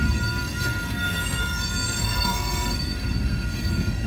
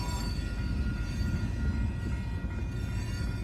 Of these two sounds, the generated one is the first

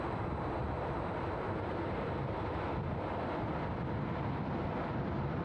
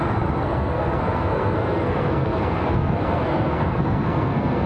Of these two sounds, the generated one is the second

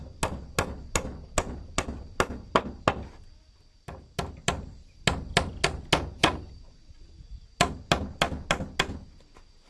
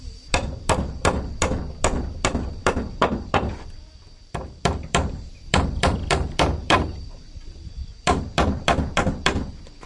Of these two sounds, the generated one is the second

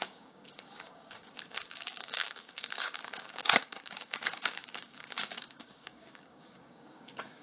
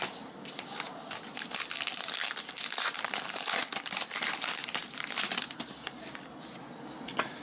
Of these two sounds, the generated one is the first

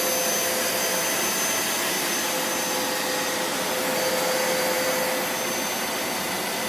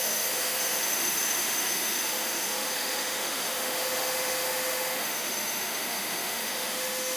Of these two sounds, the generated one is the second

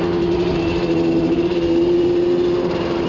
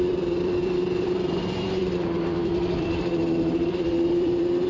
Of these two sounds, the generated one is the second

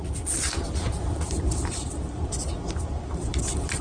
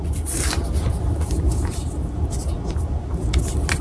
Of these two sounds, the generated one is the first